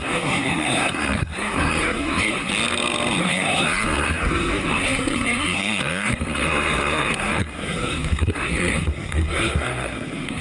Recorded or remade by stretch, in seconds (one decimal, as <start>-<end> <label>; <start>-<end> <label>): 0.0-2.5 remade; 2.5-3.2 recorded; 3.2-10.4 remade